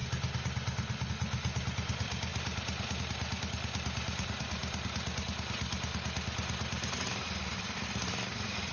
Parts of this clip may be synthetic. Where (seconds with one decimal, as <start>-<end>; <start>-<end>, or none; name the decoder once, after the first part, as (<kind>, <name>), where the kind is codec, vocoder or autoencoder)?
1.1-2.3 (vocoder, BigVGAN v2); 3.0-4.6; 7.1-8.7